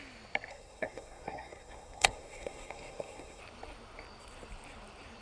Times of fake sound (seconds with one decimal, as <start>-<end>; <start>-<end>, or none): 0.5-3.4